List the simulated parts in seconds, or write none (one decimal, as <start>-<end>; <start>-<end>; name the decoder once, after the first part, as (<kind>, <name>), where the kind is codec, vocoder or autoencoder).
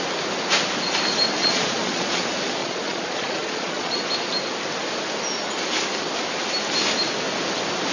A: 1.4-2.2 (vocoder, Vocos); 2.6-4.0